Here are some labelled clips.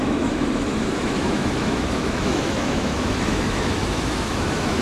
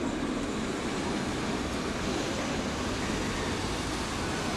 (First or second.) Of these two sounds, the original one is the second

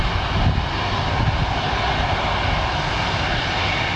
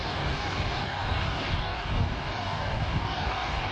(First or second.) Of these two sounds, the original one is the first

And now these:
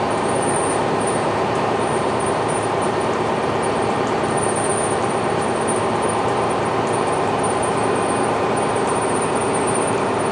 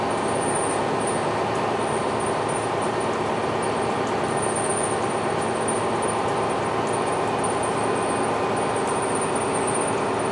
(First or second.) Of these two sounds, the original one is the second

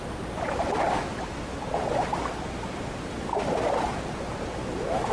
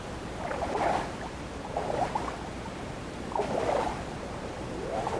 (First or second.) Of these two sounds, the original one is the first